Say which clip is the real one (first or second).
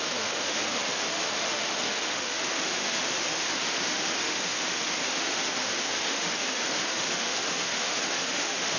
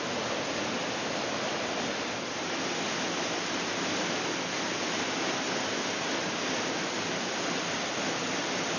second